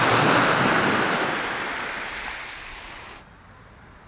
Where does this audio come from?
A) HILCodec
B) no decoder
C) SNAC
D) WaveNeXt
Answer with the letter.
B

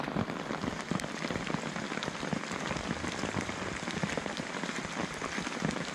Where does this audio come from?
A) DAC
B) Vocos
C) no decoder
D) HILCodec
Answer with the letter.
C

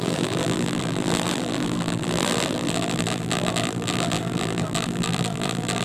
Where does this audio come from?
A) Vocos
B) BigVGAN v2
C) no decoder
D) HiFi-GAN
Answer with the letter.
B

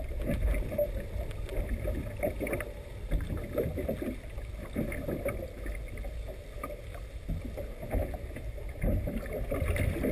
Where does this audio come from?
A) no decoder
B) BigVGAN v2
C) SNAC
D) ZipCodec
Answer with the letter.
A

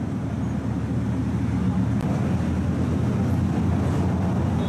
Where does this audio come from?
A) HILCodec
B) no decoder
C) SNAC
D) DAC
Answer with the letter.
B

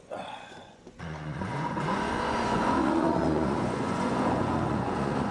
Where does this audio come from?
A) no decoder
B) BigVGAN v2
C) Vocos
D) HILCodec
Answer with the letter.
C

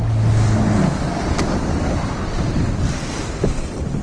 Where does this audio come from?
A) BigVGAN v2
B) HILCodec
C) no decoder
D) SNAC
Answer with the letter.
C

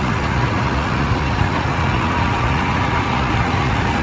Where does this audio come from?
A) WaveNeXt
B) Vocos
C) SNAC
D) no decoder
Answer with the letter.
B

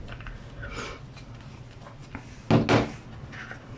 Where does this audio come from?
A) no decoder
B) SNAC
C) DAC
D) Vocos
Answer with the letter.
A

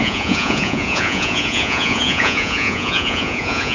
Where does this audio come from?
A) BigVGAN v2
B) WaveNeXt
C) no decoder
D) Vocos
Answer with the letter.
D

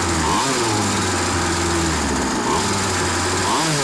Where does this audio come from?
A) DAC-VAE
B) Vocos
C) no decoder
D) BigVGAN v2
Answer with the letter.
C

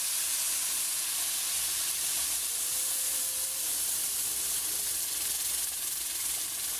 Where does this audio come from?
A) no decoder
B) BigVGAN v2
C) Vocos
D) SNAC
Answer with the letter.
B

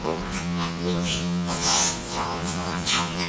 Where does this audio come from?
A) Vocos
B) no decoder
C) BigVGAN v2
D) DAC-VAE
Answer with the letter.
A